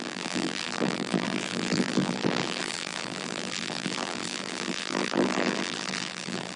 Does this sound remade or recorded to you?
remade